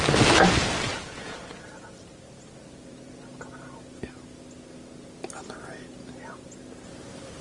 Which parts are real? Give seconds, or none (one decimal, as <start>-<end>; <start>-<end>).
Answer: 0.0-0.9; 2.1-7.4